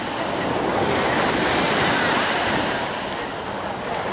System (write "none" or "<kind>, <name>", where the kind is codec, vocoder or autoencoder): none